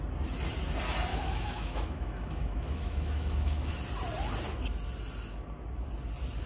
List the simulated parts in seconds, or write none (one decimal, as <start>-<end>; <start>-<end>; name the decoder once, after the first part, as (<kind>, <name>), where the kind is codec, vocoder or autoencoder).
1.1-3.7 (autoencoder, DAC-VAE)